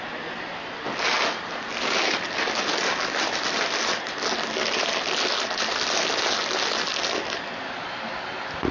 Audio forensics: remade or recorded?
recorded